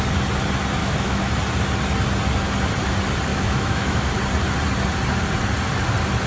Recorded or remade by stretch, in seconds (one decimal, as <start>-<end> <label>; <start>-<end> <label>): 0.0-0.8 recorded; 0.8-1.3 remade; 1.3-3.3 recorded; 3.3-4.1 remade; 4.1-6.3 recorded